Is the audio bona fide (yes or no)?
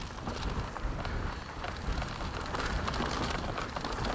yes